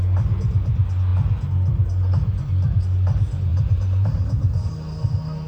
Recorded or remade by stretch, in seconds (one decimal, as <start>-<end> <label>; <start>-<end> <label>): 0.0-3.5 recorded; 3.5-4.7 remade; 4.7-5.5 recorded

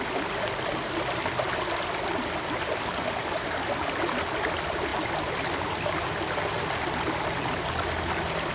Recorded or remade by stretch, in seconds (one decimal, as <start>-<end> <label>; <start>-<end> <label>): 0.0-8.5 recorded

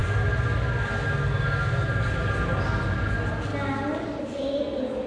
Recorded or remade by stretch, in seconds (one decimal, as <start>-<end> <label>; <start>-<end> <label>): 0.0-5.1 recorded

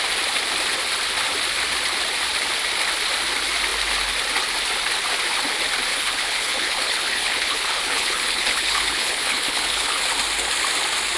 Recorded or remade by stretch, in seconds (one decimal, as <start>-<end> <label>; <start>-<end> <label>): 0.0-5.9 recorded; 5.9-10.0 remade; 10.0-11.2 recorded

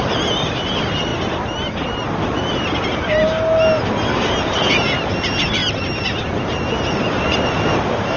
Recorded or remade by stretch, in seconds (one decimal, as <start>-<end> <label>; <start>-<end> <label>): 0.0-1.1 remade; 1.1-5.0 recorded; 5.0-5.6 remade; 5.6-6.9 recorded; 6.9-8.2 remade

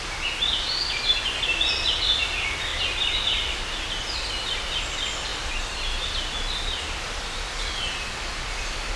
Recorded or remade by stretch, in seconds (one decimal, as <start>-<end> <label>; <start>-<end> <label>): 0.0-9.0 recorded